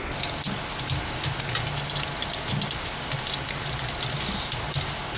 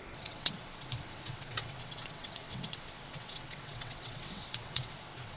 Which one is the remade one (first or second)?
second